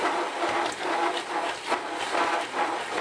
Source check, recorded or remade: remade